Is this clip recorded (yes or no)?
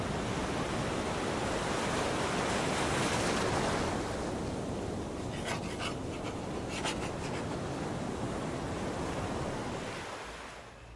yes